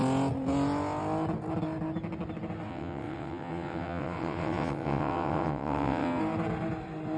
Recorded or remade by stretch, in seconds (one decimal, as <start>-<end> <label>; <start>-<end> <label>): 0.0-2.7 recorded; 2.7-6.2 remade; 6.2-7.2 recorded